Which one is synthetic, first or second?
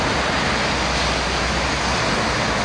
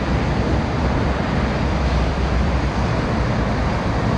second